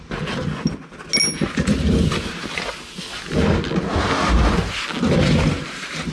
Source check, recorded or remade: recorded